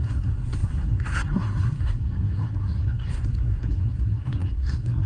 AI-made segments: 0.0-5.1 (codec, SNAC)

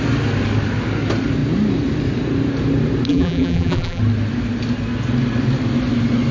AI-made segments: 3.1-4.0 (vocoder, BigVGAN v2)

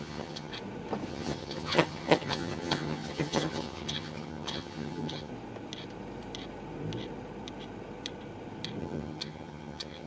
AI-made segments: 0.0-0.5 (vocoder, HiFi-GAN); 1.1-5.3; 8.8-10.1

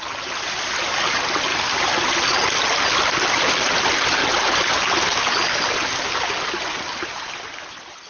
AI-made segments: 1.5-3.5 (vocoder, BigVGAN v2)